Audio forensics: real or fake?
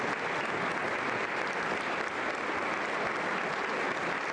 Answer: real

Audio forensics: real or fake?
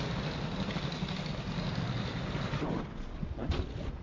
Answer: real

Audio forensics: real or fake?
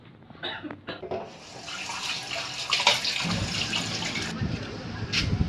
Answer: real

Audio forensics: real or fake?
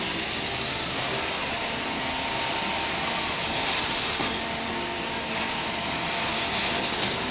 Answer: real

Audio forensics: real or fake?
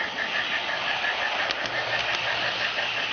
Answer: real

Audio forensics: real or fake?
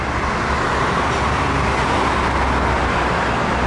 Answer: real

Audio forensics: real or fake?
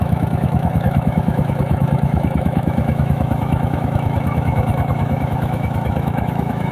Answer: fake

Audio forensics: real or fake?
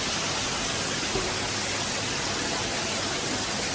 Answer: real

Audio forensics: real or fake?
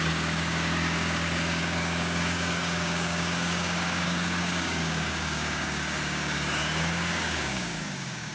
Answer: fake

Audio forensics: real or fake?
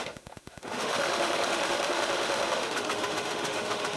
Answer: fake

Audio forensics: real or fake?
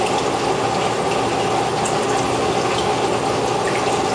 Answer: real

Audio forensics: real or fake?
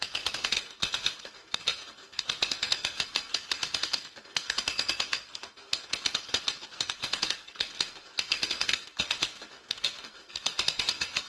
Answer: fake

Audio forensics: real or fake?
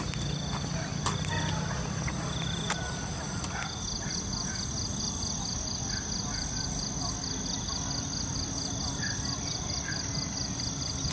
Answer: real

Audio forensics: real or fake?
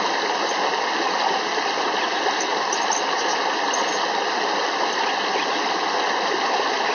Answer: real